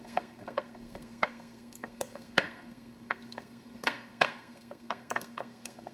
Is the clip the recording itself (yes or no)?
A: no